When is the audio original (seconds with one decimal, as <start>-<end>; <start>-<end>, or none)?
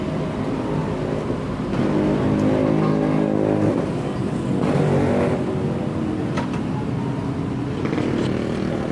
0.0-8.9